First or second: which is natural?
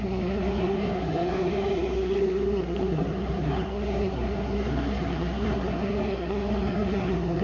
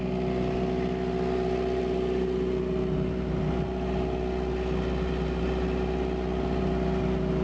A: second